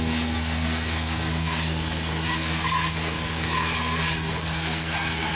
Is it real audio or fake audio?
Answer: fake